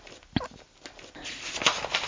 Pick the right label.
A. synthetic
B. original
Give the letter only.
B